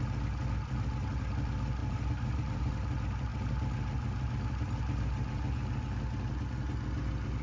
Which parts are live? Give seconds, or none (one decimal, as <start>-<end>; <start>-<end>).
0.0-1.8; 2.7-7.4